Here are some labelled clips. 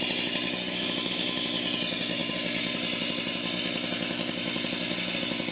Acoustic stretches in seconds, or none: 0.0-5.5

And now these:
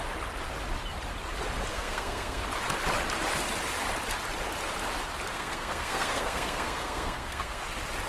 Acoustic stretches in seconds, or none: 0.0-1.7; 2.4-5.3; 7.6-8.1

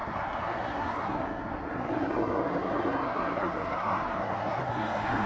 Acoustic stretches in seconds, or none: none

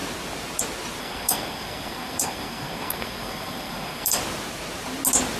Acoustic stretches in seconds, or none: 0.0-1.0; 4.2-5.4

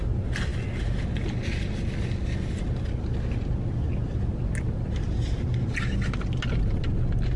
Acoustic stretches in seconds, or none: 0.0-7.4

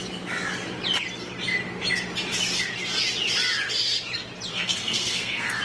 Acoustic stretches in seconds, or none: 0.0-4.5